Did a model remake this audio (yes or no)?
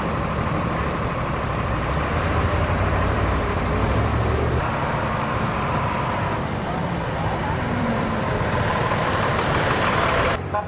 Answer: yes